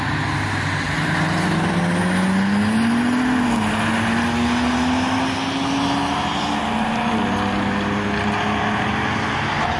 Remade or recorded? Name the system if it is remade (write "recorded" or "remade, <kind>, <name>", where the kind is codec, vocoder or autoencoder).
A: recorded